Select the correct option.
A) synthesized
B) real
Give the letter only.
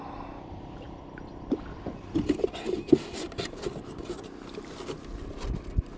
B